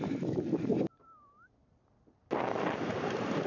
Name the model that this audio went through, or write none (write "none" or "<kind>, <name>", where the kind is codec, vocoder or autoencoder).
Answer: none